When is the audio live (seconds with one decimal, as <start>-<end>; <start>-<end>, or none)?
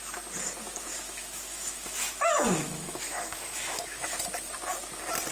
0.0-0.9; 4.1-5.3